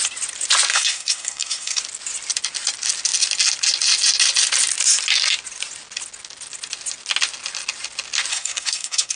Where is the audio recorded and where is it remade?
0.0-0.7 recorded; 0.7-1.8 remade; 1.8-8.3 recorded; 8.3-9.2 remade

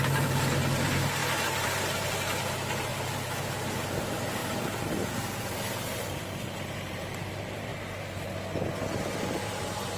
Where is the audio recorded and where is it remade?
0.0-1.2 remade; 1.2-2.4 recorded; 2.4-2.9 remade; 2.9-4.0 recorded; 4.0-4.4 remade; 4.4-5.4 recorded; 5.4-7.7 remade; 7.7-9.1 recorded; 9.1-10.0 remade

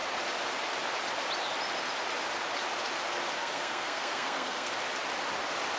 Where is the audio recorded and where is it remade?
0.0-3.4 recorded; 3.4-4.7 remade; 4.7-5.8 recorded

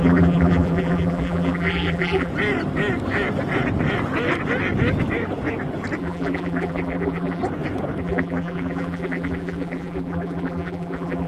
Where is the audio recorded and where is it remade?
0.0-2.3 remade; 2.3-6.0 recorded; 6.0-7.4 remade; 7.4-8.0 recorded; 8.0-11.3 remade

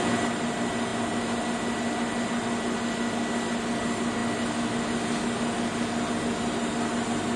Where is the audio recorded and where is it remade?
0.0-7.4 recorded